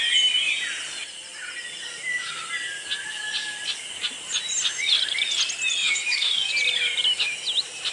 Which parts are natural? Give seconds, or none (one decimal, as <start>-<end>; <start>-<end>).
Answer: 0.0-5.8; 6.5-7.9